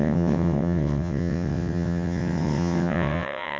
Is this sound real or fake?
fake